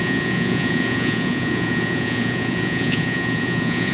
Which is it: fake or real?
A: fake